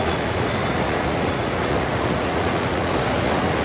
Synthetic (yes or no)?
yes